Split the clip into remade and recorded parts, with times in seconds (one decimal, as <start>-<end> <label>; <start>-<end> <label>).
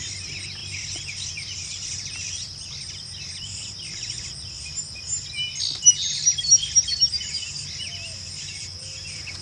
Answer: 0.0-9.4 recorded